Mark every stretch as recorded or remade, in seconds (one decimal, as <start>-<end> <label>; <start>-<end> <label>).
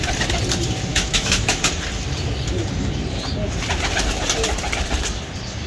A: 0.0-0.9 recorded; 0.9-1.6 remade; 1.6-5.7 recorded